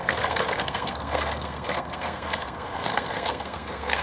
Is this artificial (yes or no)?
yes